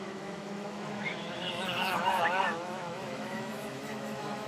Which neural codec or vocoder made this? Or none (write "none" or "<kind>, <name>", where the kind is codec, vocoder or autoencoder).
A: autoencoder, DAC-VAE